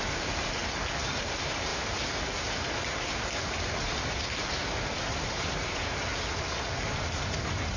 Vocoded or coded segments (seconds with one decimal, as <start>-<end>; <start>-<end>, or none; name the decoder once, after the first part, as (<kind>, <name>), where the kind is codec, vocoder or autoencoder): 0.0-0.6 (vocoder, BigVGAN v2); 1.2-1.7; 3.6-6.1; 7.2-7.8